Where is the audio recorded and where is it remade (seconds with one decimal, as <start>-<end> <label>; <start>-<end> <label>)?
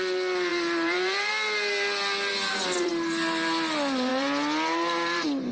0.0-0.5 recorded; 0.5-1.3 remade; 1.3-2.3 recorded; 2.3-2.9 remade; 2.9-4.1 recorded; 4.1-5.5 remade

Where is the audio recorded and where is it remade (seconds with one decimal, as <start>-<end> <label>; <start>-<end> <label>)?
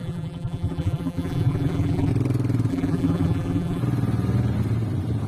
0.0-2.1 remade; 2.1-2.7 recorded; 2.7-3.8 remade; 3.8-5.3 recorded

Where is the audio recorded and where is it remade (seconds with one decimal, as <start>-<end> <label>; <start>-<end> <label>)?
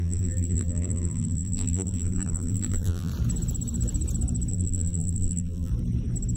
0.0-3.1 remade; 3.1-4.5 recorded; 4.5-5.7 remade; 5.7-6.4 recorded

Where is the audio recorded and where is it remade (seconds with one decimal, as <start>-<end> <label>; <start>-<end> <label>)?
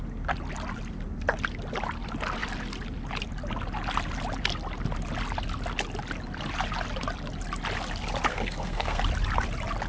0.0-8.3 recorded; 8.3-9.0 remade; 9.0-9.9 recorded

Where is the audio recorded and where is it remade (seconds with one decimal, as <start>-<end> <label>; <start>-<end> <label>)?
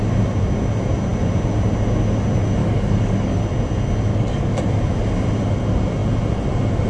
0.0-2.6 recorded; 2.6-3.4 remade; 3.4-4.1 recorded; 4.1-4.6 remade; 4.6-6.9 recorded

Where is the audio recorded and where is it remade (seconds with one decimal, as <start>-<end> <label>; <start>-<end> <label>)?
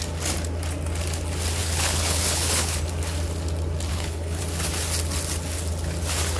0.0-1.6 recorded; 1.6-2.8 remade; 2.8-3.9 recorded; 3.9-4.4 remade; 4.4-6.4 recorded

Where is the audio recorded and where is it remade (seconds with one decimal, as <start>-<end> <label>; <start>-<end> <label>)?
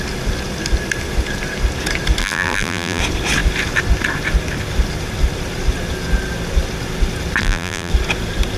0.0-2.2 recorded; 2.2-3.0 remade; 3.0-7.4 recorded; 7.4-7.9 remade; 7.9-8.6 recorded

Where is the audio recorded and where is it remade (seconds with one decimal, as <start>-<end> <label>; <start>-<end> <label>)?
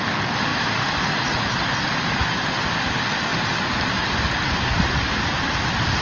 0.0-3.3 recorded; 3.3-5.3 remade; 5.3-6.0 recorded